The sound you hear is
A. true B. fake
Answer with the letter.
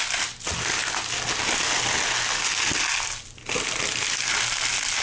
A